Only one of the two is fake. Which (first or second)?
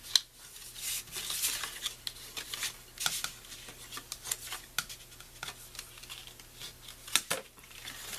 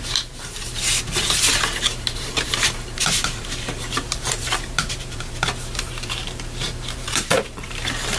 second